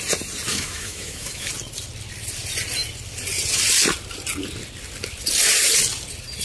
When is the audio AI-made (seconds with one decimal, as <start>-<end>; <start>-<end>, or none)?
0.5-1.5